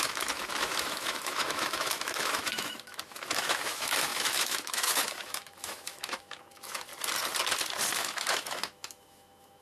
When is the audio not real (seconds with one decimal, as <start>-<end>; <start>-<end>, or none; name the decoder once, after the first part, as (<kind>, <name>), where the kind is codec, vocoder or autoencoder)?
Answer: 0.0-6.9 (autoencoder, DAC-VAE); 7.9-9.6